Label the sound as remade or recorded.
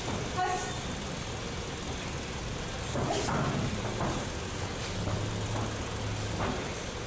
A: recorded